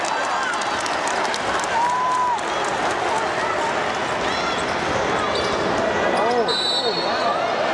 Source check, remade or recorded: recorded